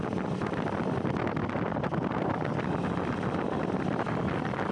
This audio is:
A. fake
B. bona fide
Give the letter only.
B